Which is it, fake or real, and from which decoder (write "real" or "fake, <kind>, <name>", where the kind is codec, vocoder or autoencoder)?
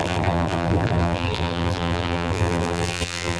fake, vocoder, BigVGAN v2